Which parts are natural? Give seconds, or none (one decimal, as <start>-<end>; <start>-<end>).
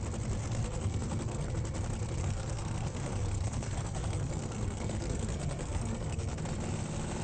0.0-0.4; 1.5-2.2; 6.4-7.2